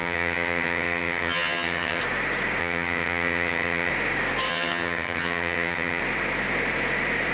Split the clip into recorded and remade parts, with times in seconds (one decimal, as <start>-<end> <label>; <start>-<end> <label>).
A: 0.0-2.0 remade; 2.0-2.6 recorded; 2.6-3.9 remade; 3.9-4.5 recorded; 4.5-6.0 remade; 6.0-7.3 recorded